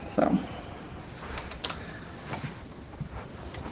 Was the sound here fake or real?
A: real